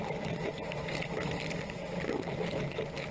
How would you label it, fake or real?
real